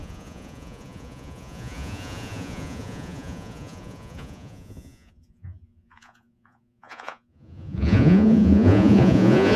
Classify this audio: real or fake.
fake